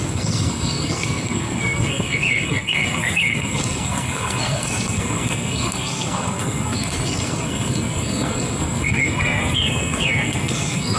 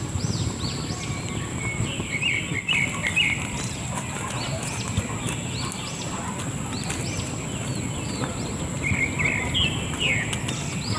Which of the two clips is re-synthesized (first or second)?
first